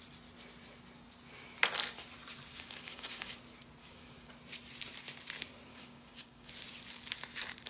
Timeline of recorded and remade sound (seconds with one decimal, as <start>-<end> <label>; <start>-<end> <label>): 0.0-2.5 recorded; 2.5-3.3 remade; 3.3-3.8 recorded; 3.8-4.3 remade; 4.3-5.7 recorded; 5.7-6.5 remade; 6.5-7.7 recorded